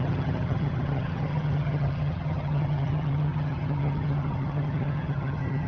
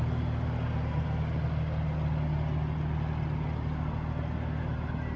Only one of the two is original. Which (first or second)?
second